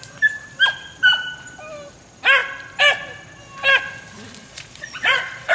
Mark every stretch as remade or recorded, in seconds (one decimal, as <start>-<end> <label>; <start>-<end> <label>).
0.0-4.4 recorded; 4.4-5.5 remade